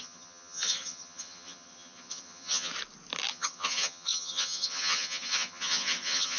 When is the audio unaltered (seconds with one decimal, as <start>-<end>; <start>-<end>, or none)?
2.7-3.3